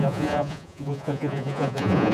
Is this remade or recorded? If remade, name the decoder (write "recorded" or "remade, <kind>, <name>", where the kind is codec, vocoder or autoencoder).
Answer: remade, vocoder, Vocos